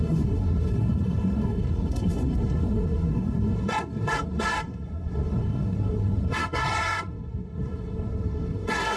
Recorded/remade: remade